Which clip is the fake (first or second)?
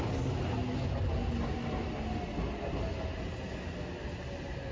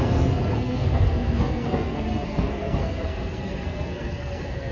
second